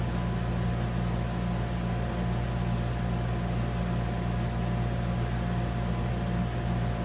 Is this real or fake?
real